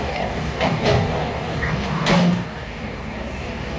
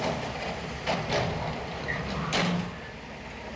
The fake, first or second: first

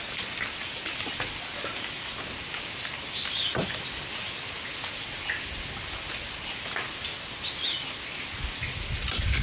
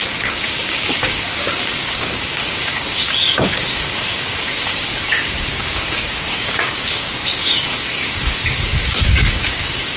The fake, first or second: second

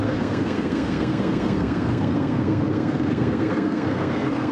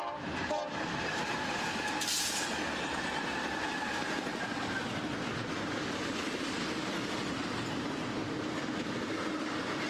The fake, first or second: first